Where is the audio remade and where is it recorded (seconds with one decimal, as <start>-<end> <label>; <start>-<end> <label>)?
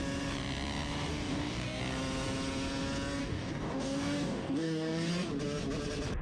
0.0-1.1 recorded; 1.1-1.8 remade; 1.8-3.2 recorded; 3.2-5.1 remade; 5.1-6.2 recorded